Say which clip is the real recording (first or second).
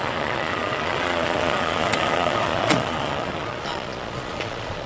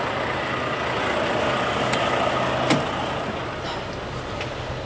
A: second